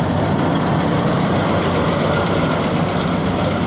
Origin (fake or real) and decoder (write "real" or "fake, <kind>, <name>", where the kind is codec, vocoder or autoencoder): real